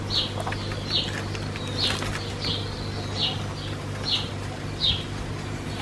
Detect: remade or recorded recorded